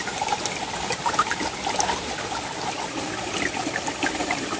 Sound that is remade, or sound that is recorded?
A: recorded